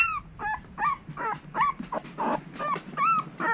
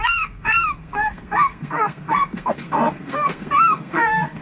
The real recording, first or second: first